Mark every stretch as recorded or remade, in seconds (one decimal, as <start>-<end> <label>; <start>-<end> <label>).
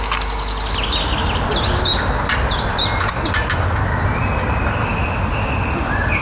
0.0-6.2 recorded